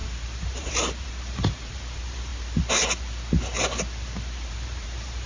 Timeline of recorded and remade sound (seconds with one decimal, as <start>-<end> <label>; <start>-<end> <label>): 0.0-2.3 remade; 2.3-4.5 recorded; 4.5-5.3 remade